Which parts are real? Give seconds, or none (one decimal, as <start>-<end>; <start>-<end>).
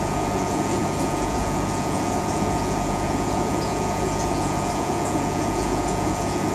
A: none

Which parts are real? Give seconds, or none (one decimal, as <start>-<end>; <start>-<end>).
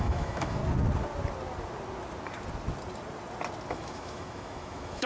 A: 0.6-3.7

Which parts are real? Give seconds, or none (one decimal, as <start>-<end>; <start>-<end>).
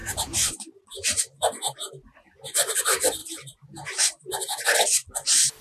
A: 2.7-3.2; 5.1-5.6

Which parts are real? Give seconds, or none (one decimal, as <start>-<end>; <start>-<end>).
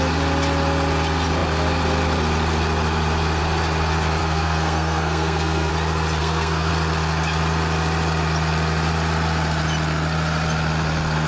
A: 0.0-4.2; 5.7-6.2; 6.7-11.3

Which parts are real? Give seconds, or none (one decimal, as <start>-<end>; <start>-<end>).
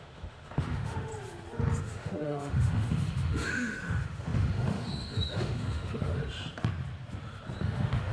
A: 1.1-1.8; 6.2-7.6